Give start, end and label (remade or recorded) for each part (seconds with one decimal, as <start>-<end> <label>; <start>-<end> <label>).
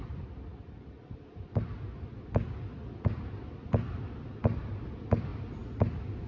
0.0-6.3 recorded